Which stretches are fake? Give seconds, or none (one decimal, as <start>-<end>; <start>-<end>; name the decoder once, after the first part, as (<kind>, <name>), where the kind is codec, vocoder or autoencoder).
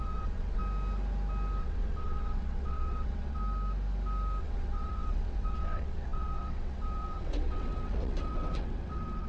0.0-0.6 (vocoder, WaveNeXt); 1.6-3.4; 4.4-9.3